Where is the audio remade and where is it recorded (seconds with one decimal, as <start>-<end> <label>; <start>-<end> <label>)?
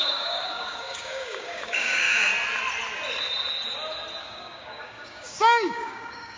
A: 0.0-2.3 remade; 2.3-4.2 recorded; 4.2-6.4 remade